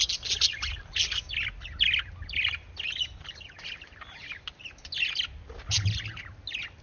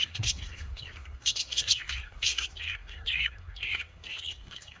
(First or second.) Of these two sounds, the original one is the first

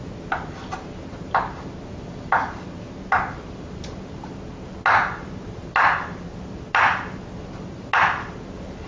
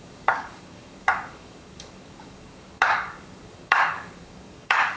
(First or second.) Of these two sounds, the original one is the first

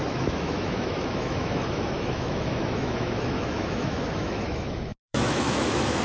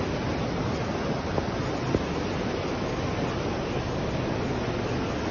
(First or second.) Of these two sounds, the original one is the second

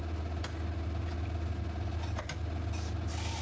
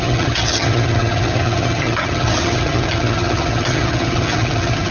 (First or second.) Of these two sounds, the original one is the first